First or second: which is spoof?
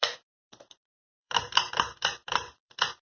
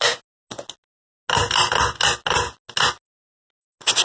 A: first